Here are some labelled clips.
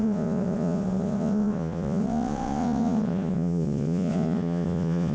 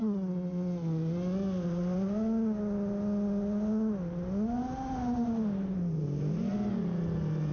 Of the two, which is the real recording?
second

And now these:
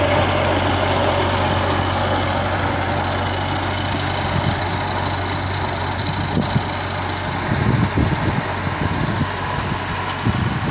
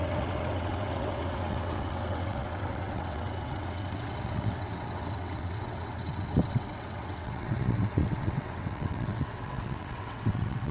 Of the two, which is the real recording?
first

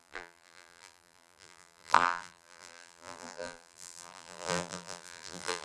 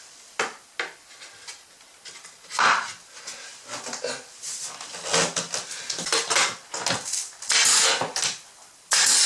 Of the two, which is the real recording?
second